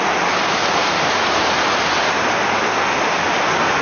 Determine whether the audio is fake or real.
real